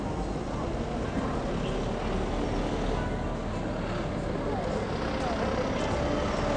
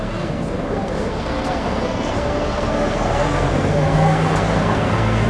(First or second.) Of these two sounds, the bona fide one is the first